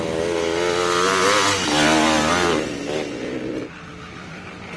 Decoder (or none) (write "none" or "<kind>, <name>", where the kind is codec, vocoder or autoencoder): none